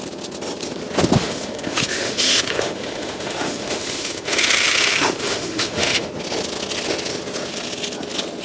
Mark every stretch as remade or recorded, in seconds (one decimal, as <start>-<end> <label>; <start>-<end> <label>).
0.0-1.2 recorded; 1.2-6.1 remade; 6.1-8.4 recorded